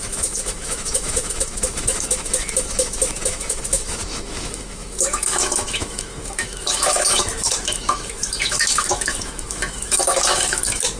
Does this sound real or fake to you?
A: fake